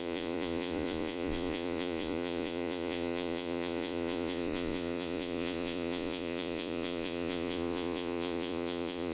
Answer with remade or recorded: remade